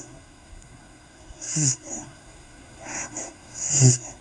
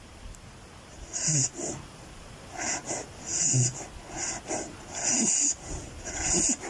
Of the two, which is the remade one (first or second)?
first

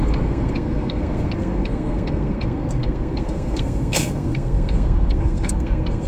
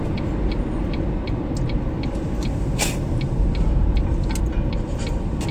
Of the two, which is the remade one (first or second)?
first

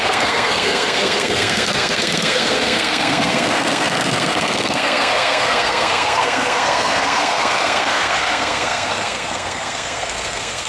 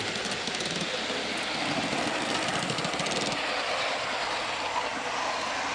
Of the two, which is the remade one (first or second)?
first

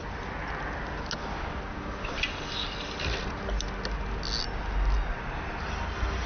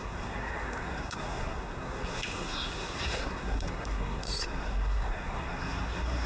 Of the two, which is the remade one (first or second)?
second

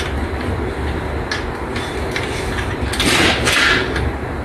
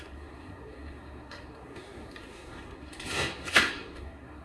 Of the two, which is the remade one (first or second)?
second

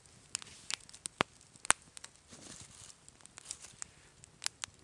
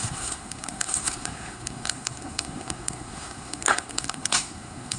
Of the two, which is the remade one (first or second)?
second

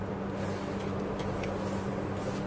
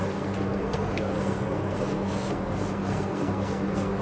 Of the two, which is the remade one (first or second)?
second